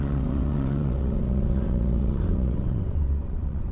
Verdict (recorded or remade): remade